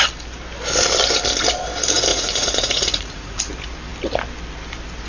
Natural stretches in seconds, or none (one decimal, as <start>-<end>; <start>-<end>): 0.0-2.1; 3.4-5.1